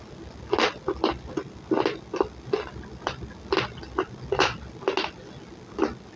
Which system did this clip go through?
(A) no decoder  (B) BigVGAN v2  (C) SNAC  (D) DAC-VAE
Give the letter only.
A